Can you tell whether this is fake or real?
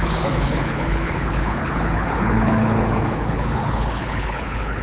fake